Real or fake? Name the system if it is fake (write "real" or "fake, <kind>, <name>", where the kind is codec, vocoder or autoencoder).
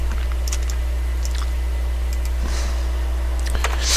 real